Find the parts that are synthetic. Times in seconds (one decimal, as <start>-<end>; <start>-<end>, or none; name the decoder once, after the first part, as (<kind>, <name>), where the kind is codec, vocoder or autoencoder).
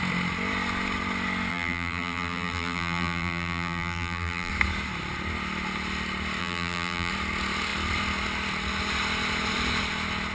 1.5-4.5 (vocoder, BigVGAN v2); 6.4-7.1